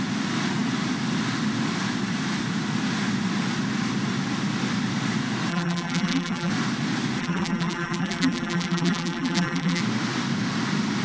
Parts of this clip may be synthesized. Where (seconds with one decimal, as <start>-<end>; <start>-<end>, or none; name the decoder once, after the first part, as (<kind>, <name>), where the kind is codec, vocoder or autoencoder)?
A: 5.5-6.5 (vocoder, BigVGAN v2); 7.2-9.8